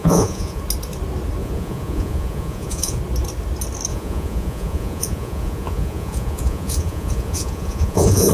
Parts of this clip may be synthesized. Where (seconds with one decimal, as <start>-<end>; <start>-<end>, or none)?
0.0-0.6; 1.4-3.0; 3.9-8.3